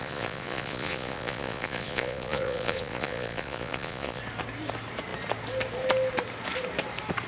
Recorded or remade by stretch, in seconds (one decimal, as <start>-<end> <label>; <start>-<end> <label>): 0.0-4.2 remade; 4.2-7.3 recorded